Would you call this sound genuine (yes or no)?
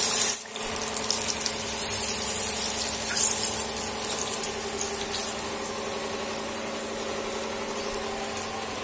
yes